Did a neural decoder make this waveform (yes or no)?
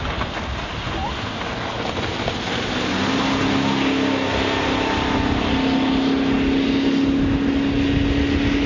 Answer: no